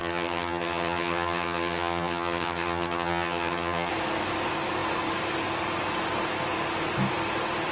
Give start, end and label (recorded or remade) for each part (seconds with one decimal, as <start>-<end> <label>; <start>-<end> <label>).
0.0-3.9 remade; 3.9-7.7 recorded